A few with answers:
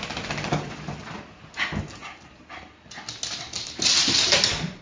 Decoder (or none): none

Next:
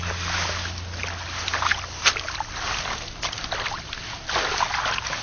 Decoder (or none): none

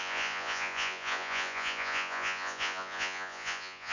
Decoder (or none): vocoder, Vocos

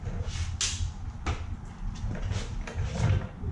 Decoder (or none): none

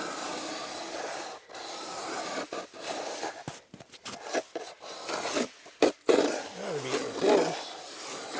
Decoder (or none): none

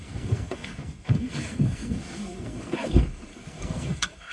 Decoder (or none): codec, SNAC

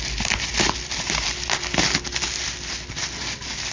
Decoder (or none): none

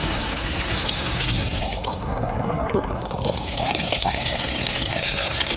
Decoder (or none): codec, SNAC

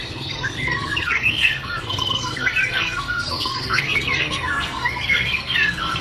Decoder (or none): codec, SNAC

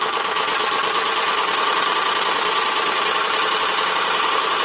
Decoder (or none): vocoder, BigVGAN v2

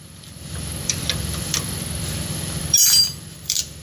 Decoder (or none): vocoder, BigVGAN v2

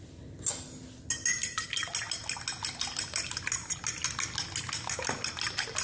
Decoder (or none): none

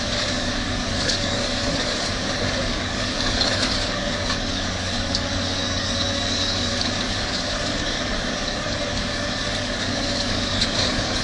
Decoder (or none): codec, DAC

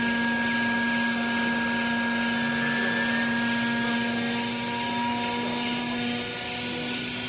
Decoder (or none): none